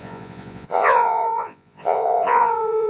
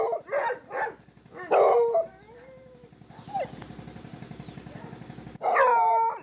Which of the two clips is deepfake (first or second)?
first